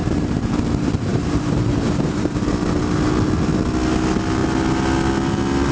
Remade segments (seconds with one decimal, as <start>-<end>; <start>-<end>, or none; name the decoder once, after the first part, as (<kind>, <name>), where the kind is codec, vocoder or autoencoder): 0.0-0.5 (vocoder, BigVGAN v2); 1.1-2.5